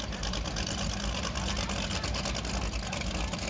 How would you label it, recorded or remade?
recorded